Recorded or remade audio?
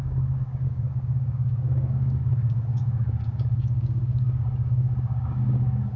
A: remade